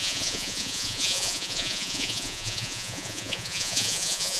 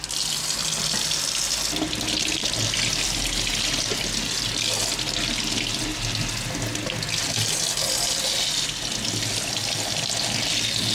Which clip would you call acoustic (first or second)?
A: second